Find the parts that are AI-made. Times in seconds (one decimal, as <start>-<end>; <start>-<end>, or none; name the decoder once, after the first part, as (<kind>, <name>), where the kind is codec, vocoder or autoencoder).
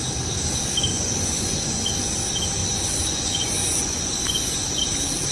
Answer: 0.9-1.9 (vocoder, Vocos); 2.6-4.8